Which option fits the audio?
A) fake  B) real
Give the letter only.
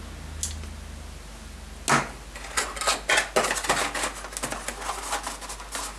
B